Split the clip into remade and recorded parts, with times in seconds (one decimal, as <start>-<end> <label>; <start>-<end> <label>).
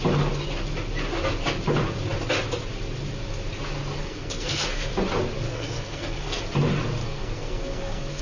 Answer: 0.0-4.0 recorded; 4.0-4.9 remade; 4.9-5.5 recorded; 5.5-6.4 remade; 6.4-7.0 recorded; 7.0-8.2 remade